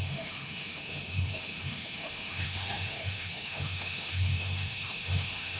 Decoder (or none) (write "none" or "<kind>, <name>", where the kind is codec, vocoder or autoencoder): autoencoder, DAC-VAE